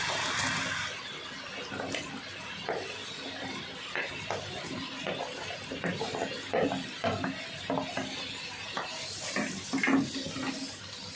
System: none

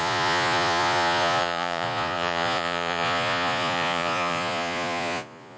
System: vocoder, Vocos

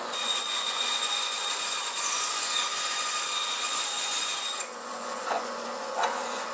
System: vocoder, Vocos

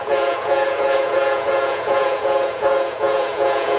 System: vocoder, Vocos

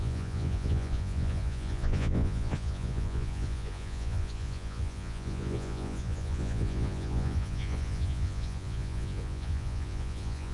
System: vocoder, Vocos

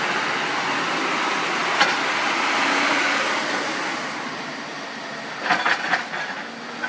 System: none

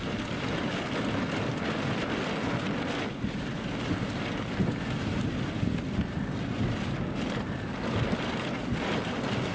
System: none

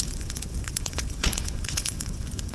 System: vocoder, Vocos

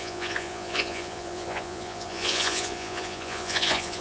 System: vocoder, Vocos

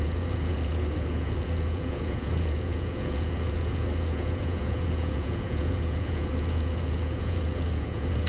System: vocoder, Vocos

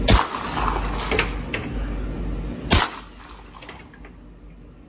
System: none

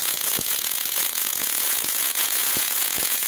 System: vocoder, Vocos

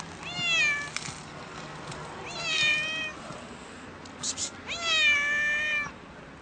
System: none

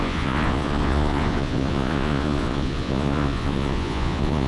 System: vocoder, Vocos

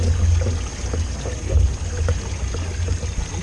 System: none